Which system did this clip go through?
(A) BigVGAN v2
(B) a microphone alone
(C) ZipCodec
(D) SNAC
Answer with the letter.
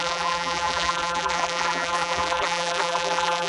A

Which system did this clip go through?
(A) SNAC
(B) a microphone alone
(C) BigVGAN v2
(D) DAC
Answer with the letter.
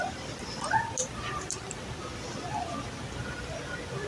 B